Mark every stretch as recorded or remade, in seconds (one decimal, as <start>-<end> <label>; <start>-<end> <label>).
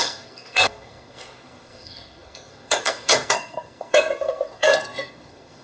0.0-5.6 remade